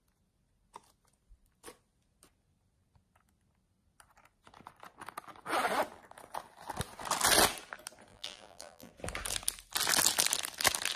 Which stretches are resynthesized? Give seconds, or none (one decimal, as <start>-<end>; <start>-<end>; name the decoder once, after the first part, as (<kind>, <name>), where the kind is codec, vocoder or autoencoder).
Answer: 8.1-8.9 (vocoder, BigVGAN v2)